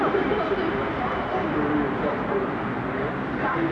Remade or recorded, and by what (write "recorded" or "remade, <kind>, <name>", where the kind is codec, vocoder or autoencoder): recorded